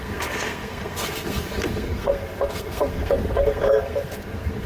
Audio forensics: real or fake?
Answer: fake